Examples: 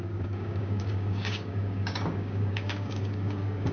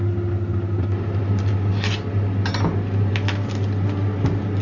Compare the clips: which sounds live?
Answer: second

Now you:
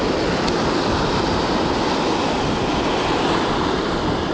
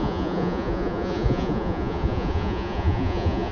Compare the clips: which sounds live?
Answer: first